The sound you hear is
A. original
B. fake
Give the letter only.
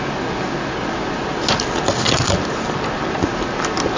A